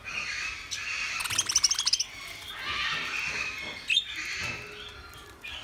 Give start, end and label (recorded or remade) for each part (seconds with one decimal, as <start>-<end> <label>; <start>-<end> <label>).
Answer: 0.0-5.6 recorded